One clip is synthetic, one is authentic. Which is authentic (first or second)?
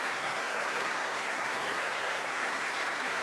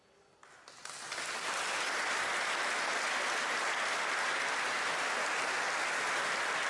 second